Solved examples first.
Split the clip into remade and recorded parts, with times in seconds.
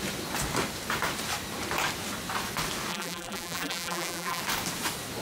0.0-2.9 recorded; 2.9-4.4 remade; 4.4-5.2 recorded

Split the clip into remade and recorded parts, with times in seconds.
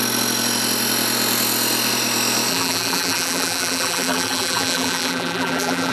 0.0-2.5 recorded; 2.5-5.9 remade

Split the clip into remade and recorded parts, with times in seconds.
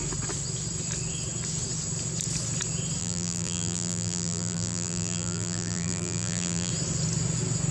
0.0-3.0 recorded; 3.0-6.7 remade; 6.7-7.7 recorded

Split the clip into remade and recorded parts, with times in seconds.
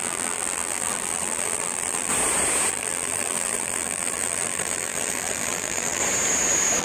0.0-2.1 remade; 2.1-2.7 recorded; 2.7-6.0 remade; 6.0-6.8 recorded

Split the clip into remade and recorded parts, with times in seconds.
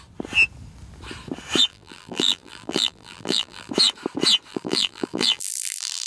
0.0-1.7 recorded; 1.7-3.7 remade; 3.7-4.5 recorded; 4.5-6.1 remade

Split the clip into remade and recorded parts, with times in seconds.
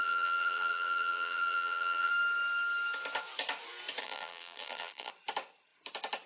0.0-2.1 remade; 2.1-4.0 recorded; 4.0-5.1 remade; 5.1-6.3 recorded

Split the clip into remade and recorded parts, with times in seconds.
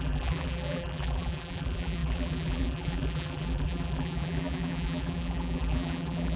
0.0-6.4 remade